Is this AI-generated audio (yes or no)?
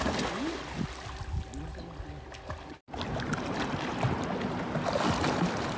no